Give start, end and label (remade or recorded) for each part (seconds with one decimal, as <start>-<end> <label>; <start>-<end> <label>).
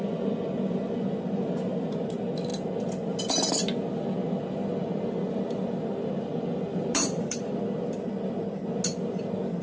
0.0-6.7 recorded; 6.7-7.6 remade; 7.6-9.6 recorded